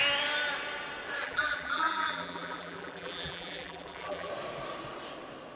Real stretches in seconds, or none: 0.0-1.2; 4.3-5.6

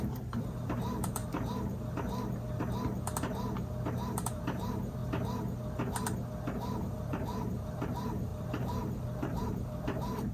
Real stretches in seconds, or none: 1.2-4.1; 5.0-6.8

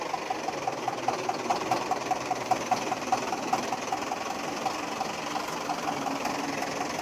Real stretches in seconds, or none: 0.0-1.5; 3.7-7.0

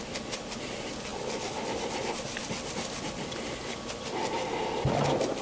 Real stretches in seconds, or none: 0.0-1.1; 4.3-5.4

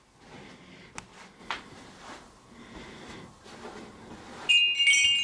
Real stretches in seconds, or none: 0.0-1.4; 4.5-5.2

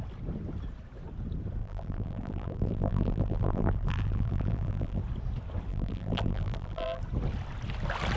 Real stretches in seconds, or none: 0.0-1.6; 5.0-5.7; 7.0-8.2